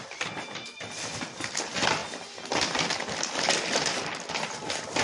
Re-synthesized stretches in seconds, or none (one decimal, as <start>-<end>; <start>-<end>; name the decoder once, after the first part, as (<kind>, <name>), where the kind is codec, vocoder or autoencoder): none